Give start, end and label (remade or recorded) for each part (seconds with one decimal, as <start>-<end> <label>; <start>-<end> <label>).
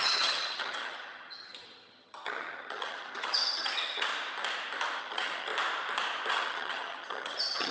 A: 0.0-4.1 remade; 4.1-5.0 recorded; 5.0-5.5 remade; 5.5-6.3 recorded; 6.3-7.7 remade